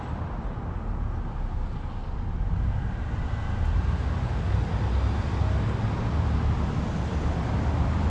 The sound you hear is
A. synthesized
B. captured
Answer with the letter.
B